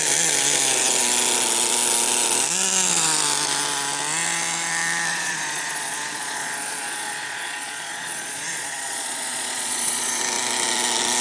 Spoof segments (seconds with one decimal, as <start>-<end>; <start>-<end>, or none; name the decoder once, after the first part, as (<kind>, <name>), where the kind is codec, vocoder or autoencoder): 5.1-10.2 (vocoder, Vocos)